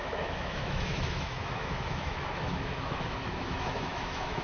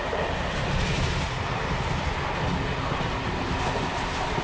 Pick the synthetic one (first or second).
first